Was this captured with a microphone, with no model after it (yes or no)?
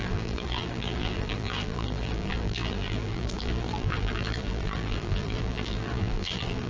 no